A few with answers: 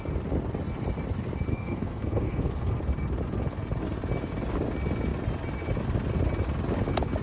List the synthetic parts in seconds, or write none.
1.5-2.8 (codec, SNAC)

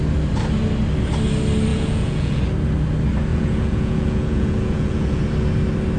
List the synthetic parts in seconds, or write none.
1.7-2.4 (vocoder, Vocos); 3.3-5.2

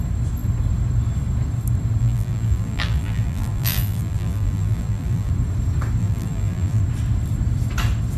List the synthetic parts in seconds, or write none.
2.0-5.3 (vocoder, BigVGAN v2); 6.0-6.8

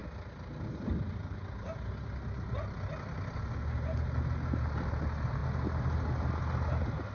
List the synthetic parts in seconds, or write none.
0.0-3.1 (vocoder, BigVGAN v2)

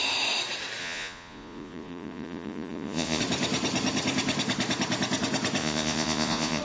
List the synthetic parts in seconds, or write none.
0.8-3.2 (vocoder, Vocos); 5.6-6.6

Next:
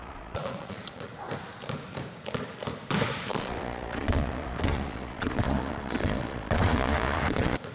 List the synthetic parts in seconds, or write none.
0.0-1.1 (vocoder, Vocos); 3.3-7.7

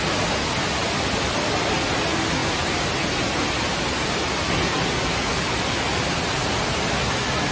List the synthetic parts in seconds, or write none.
0.8-2.0 (vocoder, BigVGAN v2)